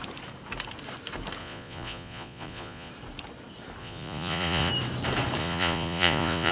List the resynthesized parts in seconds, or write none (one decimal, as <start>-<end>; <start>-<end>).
1.4-2.9; 3.8-4.7; 5.4-6.5